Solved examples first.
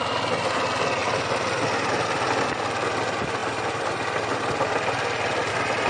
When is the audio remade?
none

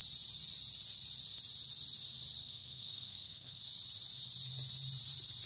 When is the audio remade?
2.4-3.6 (codec, SNAC)

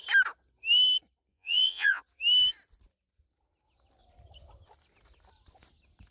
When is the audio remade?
1.3-2.0 (vocoder, Vocos)

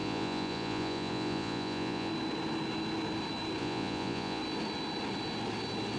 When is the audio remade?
0.0-2.1 (vocoder, Vocos); 3.6-4.4

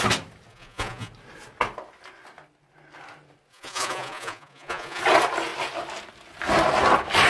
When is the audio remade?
0.5-1.1 (vocoder, Vocos); 3.5-5.0

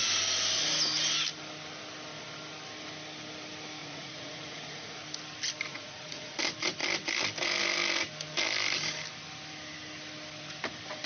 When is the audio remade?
3.8-5.0 (vocoder, Vocos); 5.7-6.3